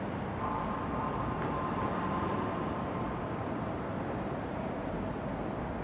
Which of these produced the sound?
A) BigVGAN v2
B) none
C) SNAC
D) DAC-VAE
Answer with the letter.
B